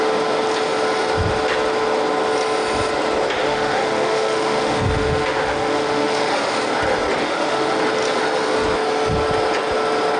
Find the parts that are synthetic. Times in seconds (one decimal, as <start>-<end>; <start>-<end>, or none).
3.4-6.4; 7.2-7.8

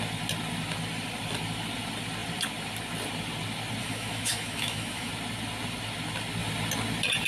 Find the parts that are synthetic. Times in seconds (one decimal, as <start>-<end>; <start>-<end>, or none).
3.8-5.1

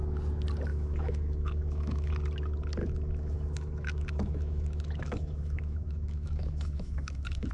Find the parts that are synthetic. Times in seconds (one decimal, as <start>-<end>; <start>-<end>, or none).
0.7-2.1; 2.8-7.5